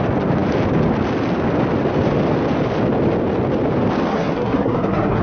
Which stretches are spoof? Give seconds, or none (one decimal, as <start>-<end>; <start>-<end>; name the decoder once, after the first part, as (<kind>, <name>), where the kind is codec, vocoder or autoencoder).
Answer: 4.1-5.2 (codec, SNAC)

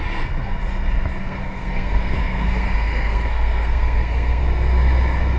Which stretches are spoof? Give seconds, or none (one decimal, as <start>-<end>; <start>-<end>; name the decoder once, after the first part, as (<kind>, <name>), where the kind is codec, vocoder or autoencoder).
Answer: 1.2-4.4 (codec, SNAC)

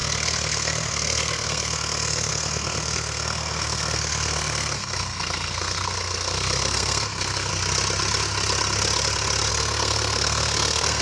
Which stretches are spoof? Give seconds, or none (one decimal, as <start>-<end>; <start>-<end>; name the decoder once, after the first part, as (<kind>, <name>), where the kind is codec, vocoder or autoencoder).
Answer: 0.0-7.5 (codec, SNAC); 9.5-11.0

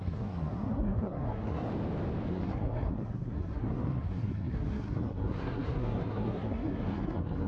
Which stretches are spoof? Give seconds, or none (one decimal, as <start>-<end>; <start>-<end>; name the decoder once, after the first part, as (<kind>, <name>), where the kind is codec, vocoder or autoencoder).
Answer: 0.0-1.7 (codec, SNAC); 2.3-7.5

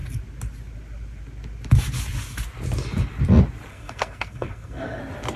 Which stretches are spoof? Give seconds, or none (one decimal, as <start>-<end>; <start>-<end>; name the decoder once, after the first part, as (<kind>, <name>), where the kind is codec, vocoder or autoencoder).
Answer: 3.7-5.0 (codec, SNAC)

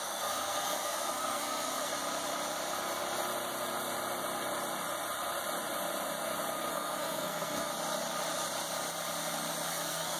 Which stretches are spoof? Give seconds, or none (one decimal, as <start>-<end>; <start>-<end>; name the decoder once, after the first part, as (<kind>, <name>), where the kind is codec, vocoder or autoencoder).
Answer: 0.0-1.9 (codec, SNAC); 6.7-7.7; 9.7-10.2